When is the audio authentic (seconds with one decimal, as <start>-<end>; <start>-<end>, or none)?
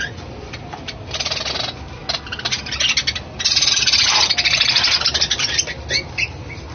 0.0-6.7